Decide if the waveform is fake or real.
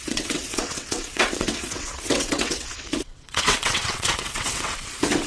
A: fake